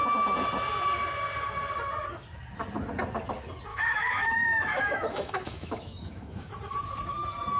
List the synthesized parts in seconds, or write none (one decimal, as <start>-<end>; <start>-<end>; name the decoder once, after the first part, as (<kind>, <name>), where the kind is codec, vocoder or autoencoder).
3.7-6.5 (autoencoder, DAC-VAE)